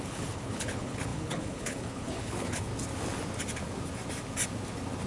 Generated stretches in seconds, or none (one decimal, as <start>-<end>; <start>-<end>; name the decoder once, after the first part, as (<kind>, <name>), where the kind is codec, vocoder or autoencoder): 0.0-2.7 (codec, HILCodec)